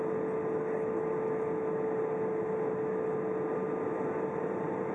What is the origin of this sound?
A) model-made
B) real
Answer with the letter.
B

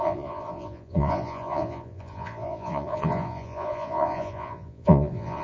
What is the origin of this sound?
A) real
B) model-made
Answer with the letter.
B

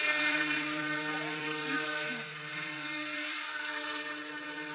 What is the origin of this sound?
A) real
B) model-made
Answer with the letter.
B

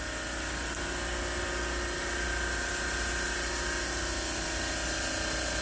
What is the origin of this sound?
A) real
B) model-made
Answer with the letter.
A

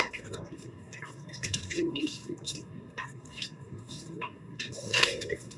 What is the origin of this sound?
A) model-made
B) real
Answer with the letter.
A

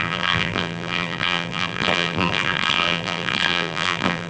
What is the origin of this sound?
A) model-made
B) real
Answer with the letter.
A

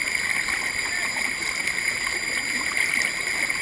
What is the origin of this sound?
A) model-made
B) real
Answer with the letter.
B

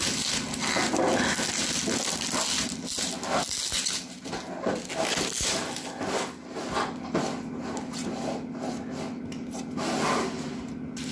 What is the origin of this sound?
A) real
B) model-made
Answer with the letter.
A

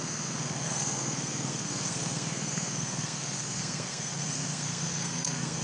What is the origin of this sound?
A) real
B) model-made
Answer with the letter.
B